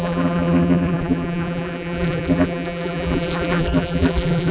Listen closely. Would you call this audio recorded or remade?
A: remade